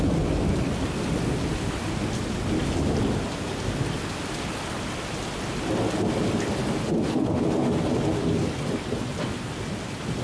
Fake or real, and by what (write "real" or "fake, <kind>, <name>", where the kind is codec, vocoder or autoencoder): real